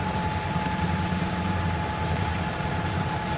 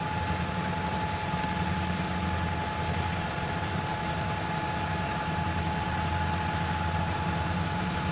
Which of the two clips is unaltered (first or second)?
second